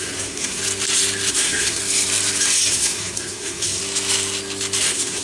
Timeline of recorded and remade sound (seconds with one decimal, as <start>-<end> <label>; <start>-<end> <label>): 0.0-0.6 remade; 0.6-1.3 recorded; 1.3-1.8 remade; 1.8-2.7 recorded; 2.7-3.8 remade; 3.8-4.8 recorded; 4.8-5.2 remade